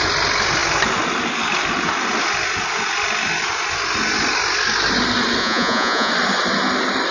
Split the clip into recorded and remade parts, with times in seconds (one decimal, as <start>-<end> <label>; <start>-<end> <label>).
0.0-5.4 recorded; 5.4-6.1 remade; 6.1-7.1 recorded